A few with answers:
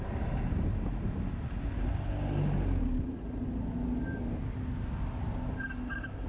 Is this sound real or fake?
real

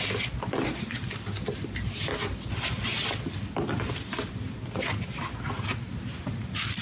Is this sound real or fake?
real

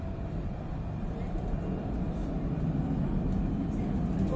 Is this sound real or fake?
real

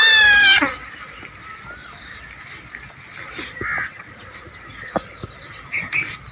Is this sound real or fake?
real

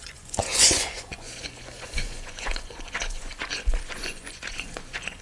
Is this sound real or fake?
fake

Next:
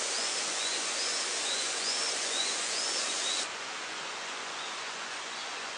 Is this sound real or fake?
fake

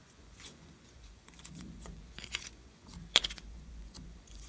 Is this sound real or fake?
fake